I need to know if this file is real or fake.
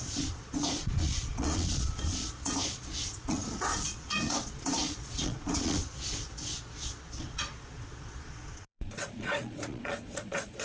fake